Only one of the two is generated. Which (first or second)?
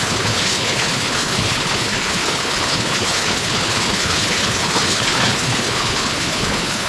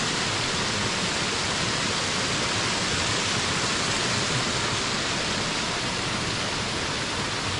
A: first